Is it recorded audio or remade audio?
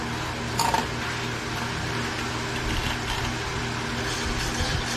recorded